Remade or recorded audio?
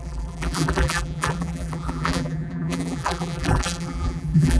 remade